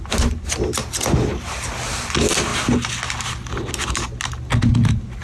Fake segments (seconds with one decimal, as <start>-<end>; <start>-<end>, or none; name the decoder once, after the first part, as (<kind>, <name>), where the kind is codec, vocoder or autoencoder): none